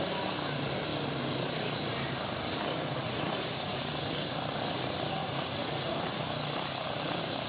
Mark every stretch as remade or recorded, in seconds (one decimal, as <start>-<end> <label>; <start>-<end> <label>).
0.0-3.0 recorded; 3.0-3.8 remade; 3.8-5.2 recorded; 5.2-6.2 remade; 6.2-7.5 recorded